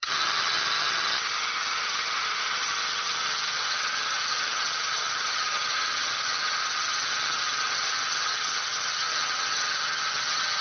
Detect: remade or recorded remade